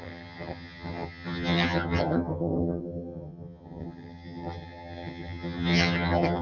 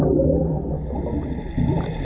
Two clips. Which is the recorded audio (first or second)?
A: second